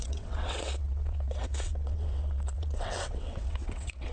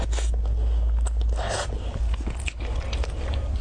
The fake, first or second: first